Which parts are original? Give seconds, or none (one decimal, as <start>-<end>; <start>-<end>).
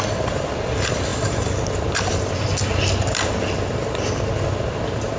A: 0.0-5.2